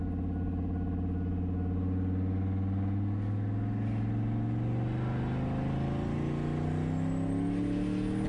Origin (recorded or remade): recorded